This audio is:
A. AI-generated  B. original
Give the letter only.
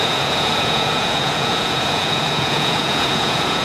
A